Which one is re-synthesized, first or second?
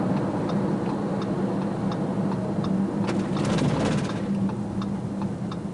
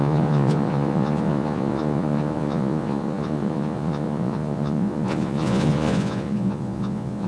second